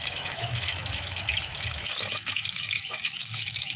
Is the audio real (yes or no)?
no